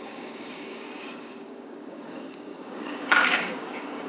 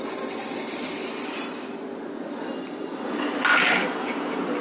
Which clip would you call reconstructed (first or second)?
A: first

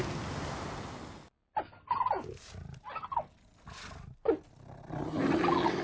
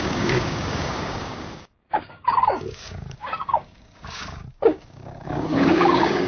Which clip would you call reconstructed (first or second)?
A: second